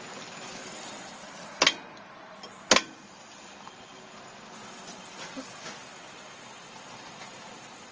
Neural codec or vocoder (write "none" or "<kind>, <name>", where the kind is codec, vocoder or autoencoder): none